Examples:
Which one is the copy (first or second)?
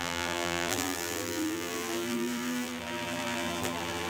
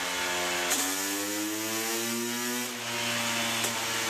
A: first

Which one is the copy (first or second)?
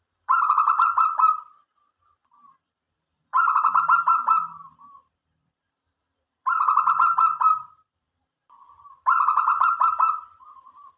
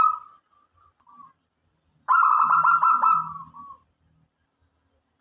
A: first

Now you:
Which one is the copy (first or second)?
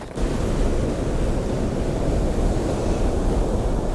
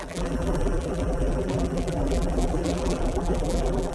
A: second